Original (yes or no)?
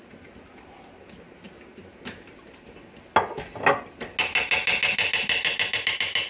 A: yes